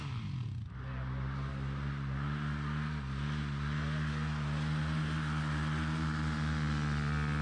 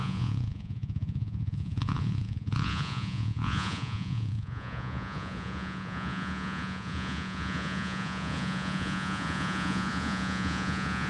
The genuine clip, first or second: first